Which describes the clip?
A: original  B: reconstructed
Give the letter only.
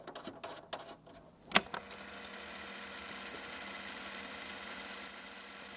A